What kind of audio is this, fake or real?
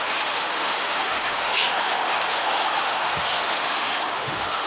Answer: fake